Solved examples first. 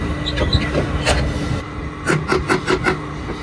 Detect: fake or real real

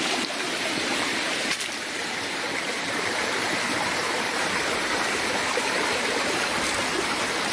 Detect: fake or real fake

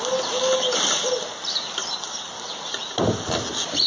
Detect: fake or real real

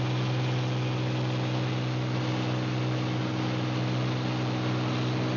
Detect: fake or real real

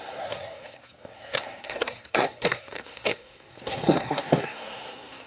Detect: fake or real fake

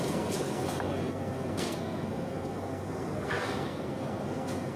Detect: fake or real fake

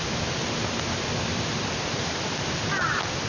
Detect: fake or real real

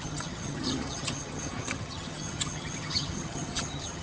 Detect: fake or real fake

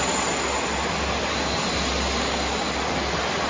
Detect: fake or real real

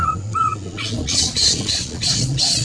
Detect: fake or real fake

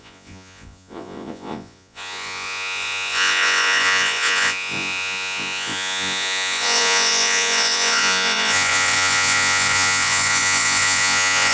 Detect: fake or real fake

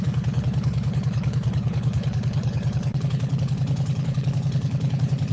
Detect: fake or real fake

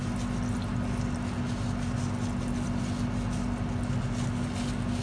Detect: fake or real real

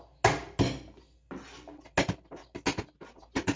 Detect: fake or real real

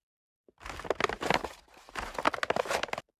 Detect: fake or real real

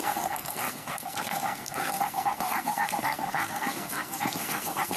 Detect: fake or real fake